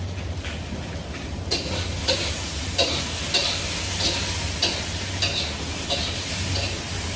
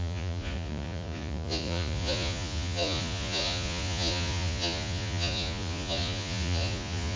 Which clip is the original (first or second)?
first